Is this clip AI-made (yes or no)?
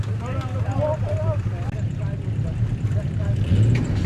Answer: no